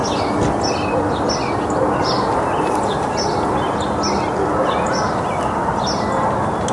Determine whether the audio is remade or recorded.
recorded